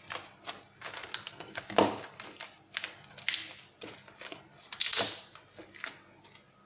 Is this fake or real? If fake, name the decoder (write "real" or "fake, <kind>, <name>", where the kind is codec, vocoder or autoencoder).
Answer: real